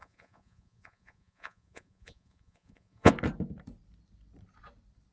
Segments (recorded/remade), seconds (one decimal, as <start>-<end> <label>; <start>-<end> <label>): 0.0-3.1 remade; 3.1-5.1 recorded